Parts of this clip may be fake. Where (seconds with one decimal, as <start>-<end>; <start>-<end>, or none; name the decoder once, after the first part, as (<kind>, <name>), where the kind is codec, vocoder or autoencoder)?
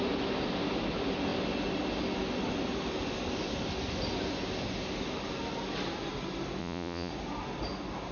6.6-7.1 (vocoder, Vocos)